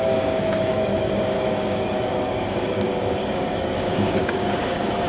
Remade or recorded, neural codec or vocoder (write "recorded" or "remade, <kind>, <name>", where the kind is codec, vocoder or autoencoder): remade, codec, DAC